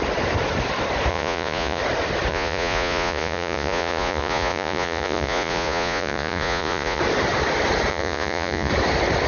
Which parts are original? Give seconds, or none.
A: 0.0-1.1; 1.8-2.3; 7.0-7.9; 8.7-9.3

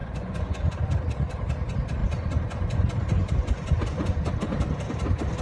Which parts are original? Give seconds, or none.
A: 0.7-2.0; 4.3-5.4

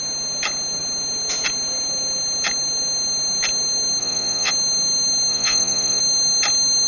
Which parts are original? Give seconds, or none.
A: 0.0-4.0; 4.5-5.3; 6.0-6.9

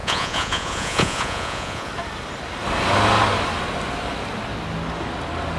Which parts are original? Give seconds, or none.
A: 1.9-5.6